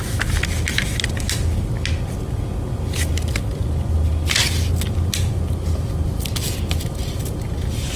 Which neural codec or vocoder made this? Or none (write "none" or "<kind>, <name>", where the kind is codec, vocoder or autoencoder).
none